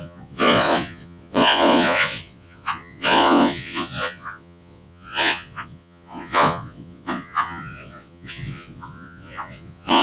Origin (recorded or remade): remade